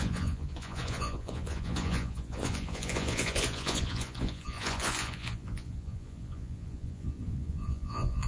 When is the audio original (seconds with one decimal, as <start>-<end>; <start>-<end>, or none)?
none